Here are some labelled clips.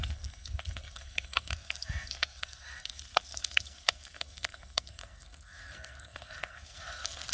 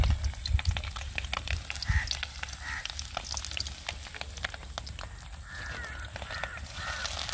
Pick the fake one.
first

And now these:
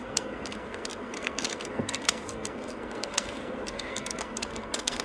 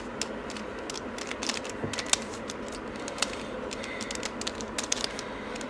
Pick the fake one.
first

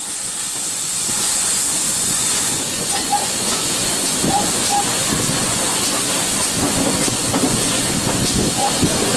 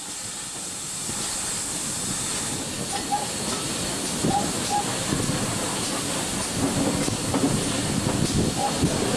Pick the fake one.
first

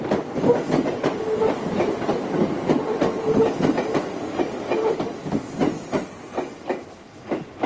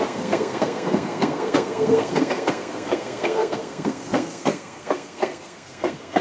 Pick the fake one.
second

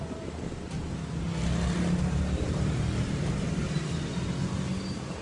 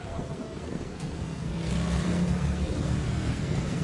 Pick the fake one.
second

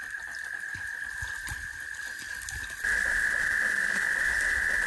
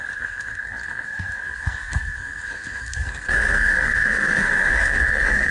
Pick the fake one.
second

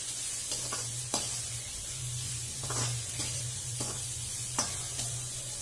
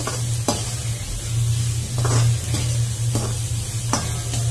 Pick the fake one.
first